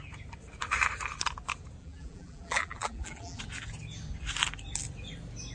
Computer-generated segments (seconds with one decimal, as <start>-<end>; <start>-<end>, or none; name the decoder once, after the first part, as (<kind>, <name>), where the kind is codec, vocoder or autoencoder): 1.8-3.4 (vocoder, BigVGAN v2)